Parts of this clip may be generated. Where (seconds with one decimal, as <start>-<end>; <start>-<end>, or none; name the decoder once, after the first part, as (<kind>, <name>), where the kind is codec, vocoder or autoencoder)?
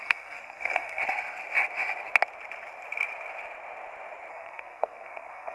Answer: 0.0-1.0 (codec, SNAC); 4.3-5.5